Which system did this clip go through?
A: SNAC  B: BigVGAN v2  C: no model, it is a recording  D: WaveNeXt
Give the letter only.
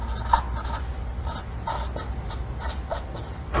C